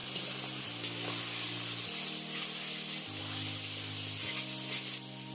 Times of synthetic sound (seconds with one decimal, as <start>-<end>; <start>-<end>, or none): none